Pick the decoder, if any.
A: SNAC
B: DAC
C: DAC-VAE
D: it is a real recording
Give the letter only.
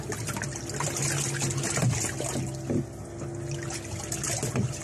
D